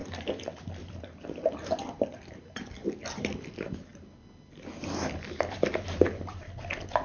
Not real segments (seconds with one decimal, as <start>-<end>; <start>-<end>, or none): none